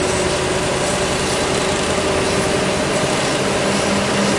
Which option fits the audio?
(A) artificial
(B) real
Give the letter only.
B